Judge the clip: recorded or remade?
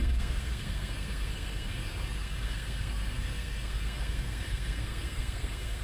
remade